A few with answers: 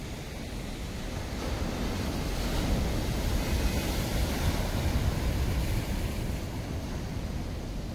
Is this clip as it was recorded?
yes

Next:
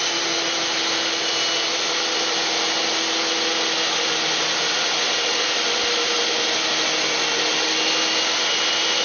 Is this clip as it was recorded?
yes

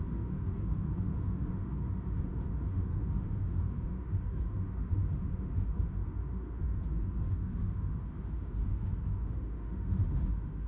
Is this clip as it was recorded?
no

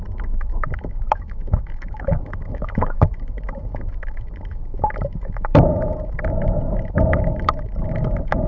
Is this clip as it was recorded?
no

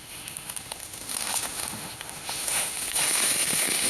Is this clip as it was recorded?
no